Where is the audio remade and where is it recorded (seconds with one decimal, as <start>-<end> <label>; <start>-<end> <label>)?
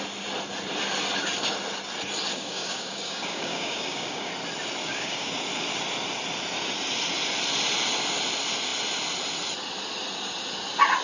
0.0-2.3 recorded; 2.3-4.3 remade; 4.3-4.8 recorded; 4.8-5.3 remade; 5.3-11.0 recorded